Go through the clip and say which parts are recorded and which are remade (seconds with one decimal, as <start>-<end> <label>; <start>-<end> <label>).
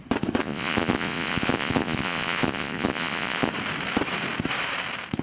0.0-0.4 recorded; 0.4-3.5 remade; 3.5-5.2 recorded